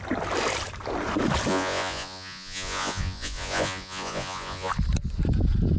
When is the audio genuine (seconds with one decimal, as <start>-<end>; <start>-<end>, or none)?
0.0-1.5; 4.7-5.8